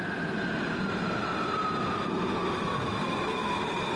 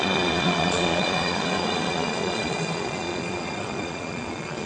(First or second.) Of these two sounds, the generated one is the second